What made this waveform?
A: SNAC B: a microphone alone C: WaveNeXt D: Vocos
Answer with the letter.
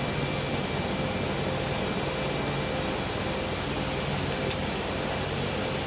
B